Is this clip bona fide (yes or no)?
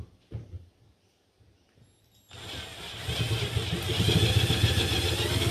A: yes